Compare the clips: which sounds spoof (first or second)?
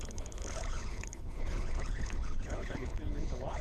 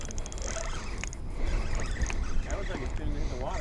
first